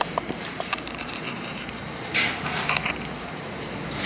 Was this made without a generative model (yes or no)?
no